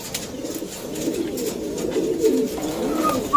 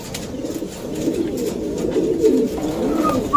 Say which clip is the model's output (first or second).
second